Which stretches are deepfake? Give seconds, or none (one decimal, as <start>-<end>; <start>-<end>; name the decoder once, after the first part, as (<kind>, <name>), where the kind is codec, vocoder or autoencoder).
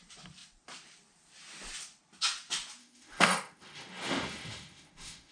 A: 2.8-5.3 (autoencoder, DAC-VAE)